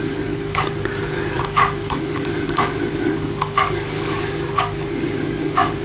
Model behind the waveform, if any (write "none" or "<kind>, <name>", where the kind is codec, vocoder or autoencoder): codec, DAC